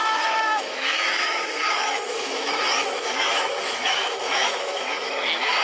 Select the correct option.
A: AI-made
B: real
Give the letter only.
A